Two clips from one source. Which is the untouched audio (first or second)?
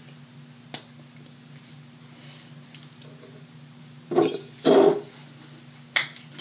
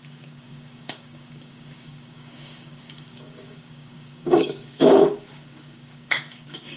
first